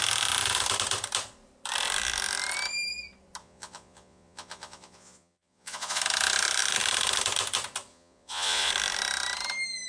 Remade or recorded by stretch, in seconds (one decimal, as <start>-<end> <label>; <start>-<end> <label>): 0.0-3.4 recorded; 3.4-6.0 remade; 6.0-7.9 recorded; 7.9-8.7 remade; 8.7-9.9 recorded